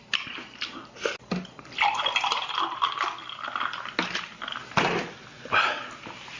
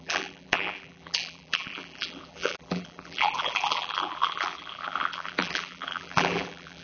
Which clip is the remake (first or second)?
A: second